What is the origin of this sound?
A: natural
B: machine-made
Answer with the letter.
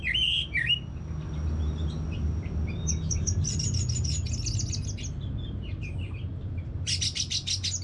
A